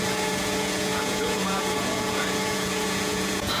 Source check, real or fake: fake